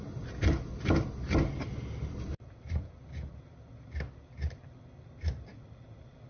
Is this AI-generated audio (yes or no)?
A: no